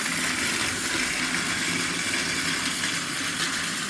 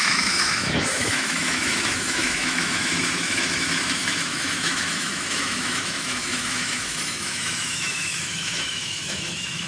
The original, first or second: first